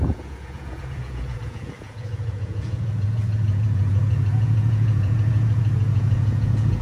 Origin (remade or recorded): remade